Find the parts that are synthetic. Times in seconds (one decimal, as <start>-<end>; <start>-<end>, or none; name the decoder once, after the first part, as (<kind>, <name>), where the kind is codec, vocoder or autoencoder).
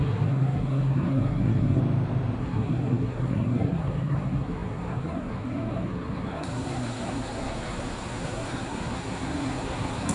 0.0-1.8 (codec, SNAC); 2.4-10.1